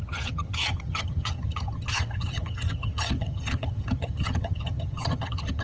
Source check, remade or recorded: remade